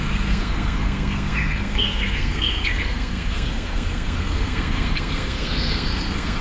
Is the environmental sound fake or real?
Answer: fake